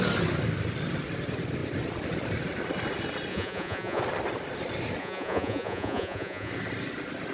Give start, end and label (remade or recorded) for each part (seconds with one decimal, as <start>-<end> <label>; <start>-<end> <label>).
0.0-3.3 recorded; 3.3-4.0 remade; 4.0-5.0 recorded; 5.0-6.5 remade; 6.5-7.3 recorded